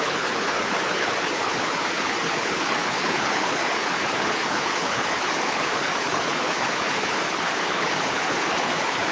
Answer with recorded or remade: remade